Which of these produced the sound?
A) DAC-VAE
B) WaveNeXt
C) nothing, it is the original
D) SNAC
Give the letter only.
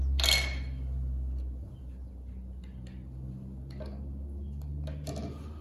C